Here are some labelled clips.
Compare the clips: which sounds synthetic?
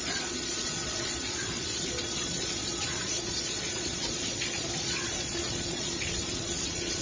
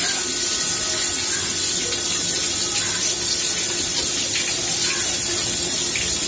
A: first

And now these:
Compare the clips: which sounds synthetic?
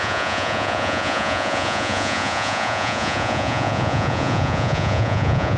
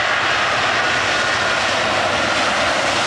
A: first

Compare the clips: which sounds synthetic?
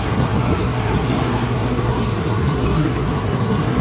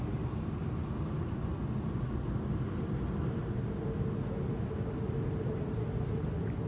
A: first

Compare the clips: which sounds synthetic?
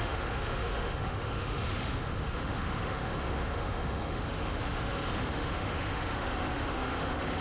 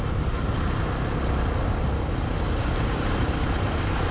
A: first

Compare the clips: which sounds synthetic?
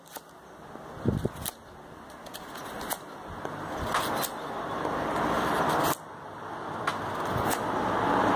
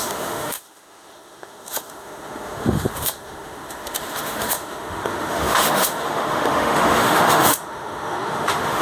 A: second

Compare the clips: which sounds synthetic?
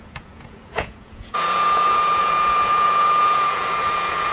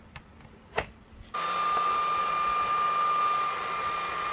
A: first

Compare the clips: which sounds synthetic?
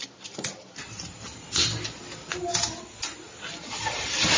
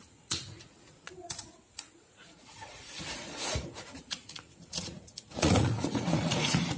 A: second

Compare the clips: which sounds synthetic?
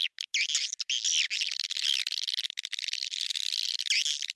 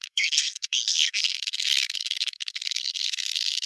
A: second